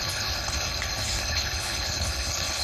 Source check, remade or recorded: remade